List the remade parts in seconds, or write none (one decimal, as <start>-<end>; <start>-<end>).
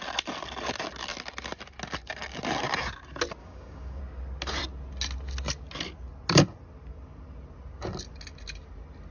3.4-4.0